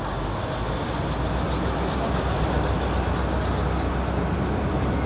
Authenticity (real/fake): real